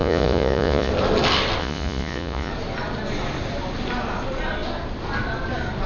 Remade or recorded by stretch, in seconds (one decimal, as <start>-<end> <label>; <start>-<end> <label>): 0.0-0.9 remade; 0.9-1.6 recorded; 1.6-2.5 remade; 2.5-5.9 recorded